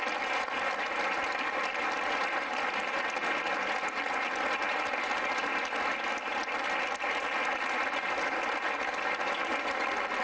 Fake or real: real